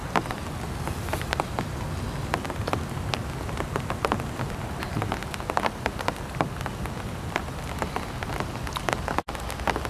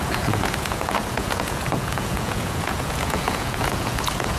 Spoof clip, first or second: second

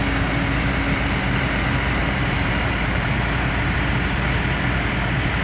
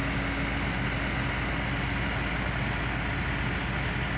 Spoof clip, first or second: first